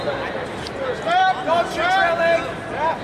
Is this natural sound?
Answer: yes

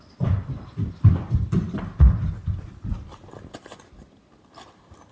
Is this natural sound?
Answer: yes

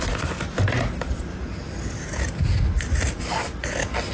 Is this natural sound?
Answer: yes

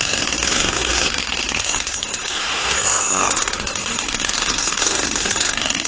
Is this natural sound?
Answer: no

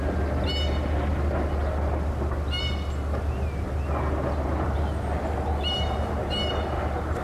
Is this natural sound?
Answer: yes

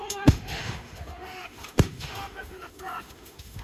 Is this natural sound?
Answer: no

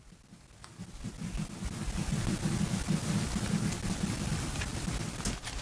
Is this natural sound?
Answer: yes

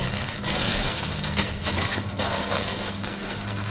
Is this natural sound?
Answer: no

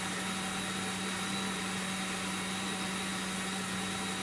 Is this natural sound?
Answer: yes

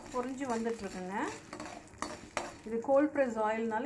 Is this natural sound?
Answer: yes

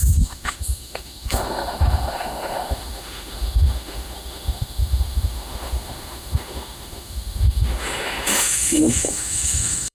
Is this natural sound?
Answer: no